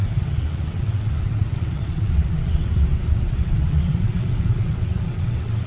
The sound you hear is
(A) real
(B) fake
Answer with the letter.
B